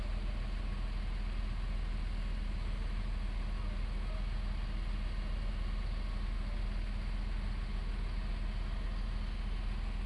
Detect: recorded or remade recorded